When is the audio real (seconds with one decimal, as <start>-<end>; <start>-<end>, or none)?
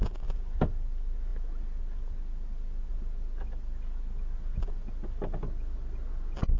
0.0-6.6